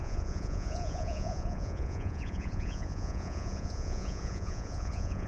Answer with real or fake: fake